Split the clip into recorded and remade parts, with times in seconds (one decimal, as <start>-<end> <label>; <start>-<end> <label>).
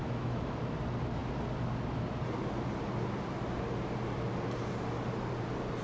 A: 0.0-0.6 remade; 0.6-5.8 recorded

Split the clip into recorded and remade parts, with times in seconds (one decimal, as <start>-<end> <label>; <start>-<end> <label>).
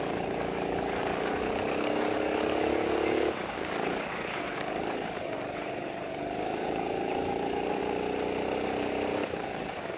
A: 0.0-7.8 remade; 7.8-9.1 recorded; 9.1-10.0 remade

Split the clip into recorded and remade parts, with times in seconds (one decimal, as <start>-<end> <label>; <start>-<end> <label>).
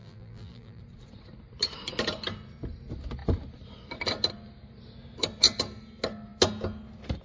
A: 0.0-0.8 remade; 0.8-7.2 recorded